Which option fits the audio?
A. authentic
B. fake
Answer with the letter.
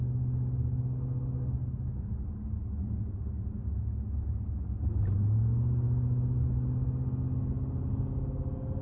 A